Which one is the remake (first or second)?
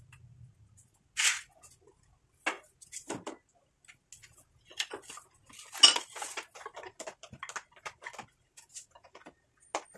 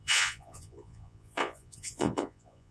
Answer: second